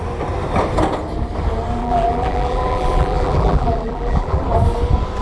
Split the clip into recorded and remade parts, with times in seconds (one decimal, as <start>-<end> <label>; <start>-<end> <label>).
0.0-1.8 recorded; 1.8-4.4 remade; 4.4-5.2 recorded